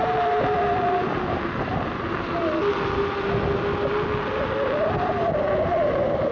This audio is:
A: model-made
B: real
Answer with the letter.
B